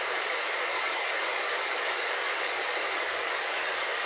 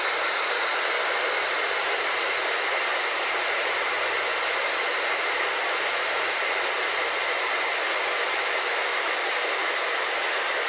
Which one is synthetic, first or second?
first